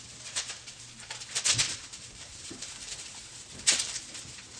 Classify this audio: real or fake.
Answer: fake